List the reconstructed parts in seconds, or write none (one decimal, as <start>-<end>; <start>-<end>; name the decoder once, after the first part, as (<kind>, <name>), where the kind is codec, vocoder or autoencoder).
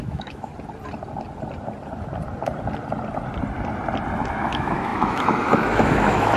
0.0-0.5 (autoencoder, DAC-VAE); 4.3-6.4